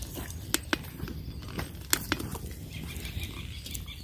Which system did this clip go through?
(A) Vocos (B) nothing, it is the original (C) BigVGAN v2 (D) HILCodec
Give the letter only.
B